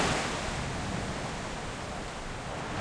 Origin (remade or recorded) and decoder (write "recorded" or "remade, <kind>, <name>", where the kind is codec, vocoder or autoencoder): recorded